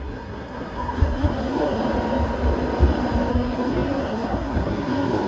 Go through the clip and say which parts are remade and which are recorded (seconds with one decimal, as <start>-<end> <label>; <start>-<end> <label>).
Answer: 0.0-1.8 remade; 1.8-3.3 recorded; 3.3-5.3 remade